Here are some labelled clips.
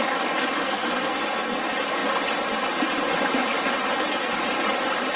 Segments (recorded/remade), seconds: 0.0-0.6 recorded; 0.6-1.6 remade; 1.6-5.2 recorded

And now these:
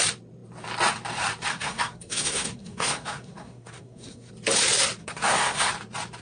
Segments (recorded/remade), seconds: 0.0-1.5 recorded; 1.5-4.3 remade; 4.3-5.0 recorded; 5.0-5.7 remade; 5.7-6.2 recorded

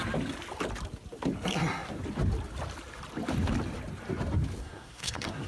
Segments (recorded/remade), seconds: 0.0-4.6 recorded; 4.6-5.5 remade

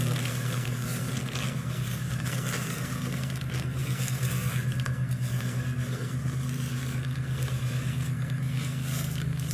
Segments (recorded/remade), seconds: 0.0-9.5 remade

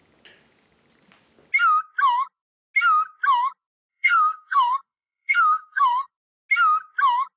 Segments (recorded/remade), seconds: 0.0-3.9 recorded; 3.9-6.1 remade; 6.1-7.4 recorded

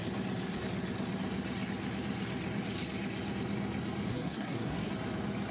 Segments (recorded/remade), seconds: 0.0-4.1 recorded; 4.1-4.9 remade; 4.9-5.5 recorded

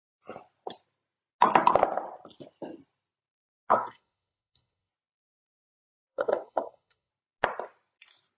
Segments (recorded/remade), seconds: 0.0-3.7 recorded; 3.7-4.9 remade; 4.9-5.5 recorded; 5.5-7.1 remade; 7.1-8.4 recorded

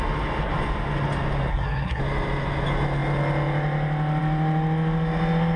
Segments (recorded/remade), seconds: 0.0-1.5 recorded; 1.5-2.0 remade; 2.0-5.6 recorded